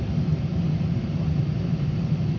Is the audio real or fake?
real